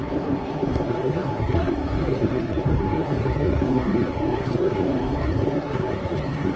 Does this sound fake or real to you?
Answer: fake